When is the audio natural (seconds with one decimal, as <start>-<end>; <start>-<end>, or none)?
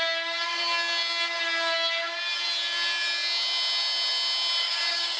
0.0-4.6